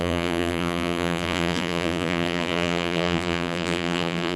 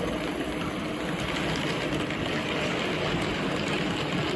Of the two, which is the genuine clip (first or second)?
second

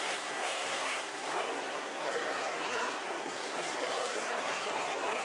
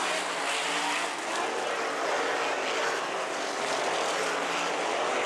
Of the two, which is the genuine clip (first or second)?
second